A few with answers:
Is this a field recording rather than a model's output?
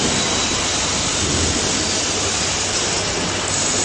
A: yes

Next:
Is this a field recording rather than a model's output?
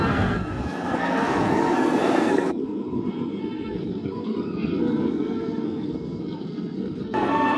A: no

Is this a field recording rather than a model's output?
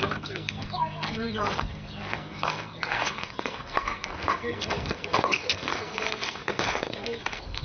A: no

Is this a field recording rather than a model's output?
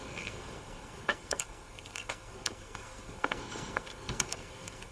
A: no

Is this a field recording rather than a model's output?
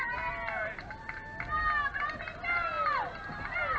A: yes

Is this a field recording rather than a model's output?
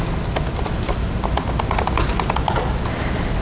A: yes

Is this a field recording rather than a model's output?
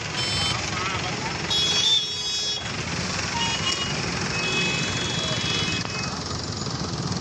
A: yes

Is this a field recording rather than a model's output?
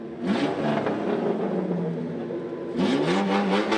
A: yes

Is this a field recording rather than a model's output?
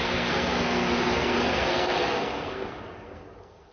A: no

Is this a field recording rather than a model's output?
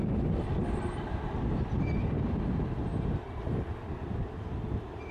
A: yes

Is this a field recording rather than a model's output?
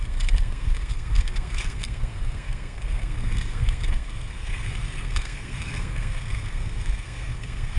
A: no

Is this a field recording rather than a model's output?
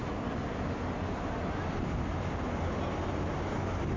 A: yes